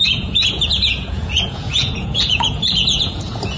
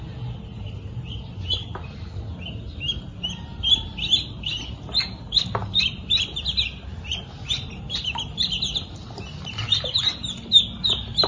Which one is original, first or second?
second